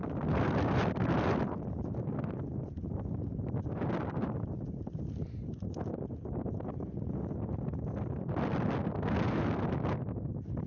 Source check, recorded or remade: recorded